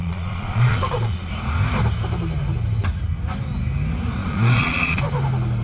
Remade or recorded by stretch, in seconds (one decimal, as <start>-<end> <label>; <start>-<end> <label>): 0.0-1.3 remade; 1.3-4.2 recorded; 4.2-5.0 remade; 5.0-5.6 recorded